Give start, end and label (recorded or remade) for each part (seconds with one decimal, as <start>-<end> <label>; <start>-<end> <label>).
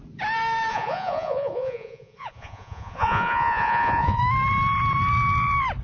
0.0-0.7 recorded; 0.7-4.2 remade; 4.2-5.8 recorded